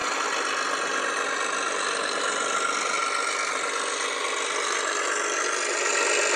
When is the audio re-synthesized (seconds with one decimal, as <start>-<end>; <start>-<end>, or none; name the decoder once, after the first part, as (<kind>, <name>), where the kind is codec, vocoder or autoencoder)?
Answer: none

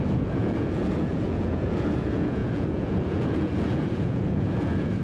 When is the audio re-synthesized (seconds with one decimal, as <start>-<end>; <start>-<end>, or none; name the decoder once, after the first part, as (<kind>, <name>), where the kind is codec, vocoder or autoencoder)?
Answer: 0.0-5.0 (vocoder, Vocos)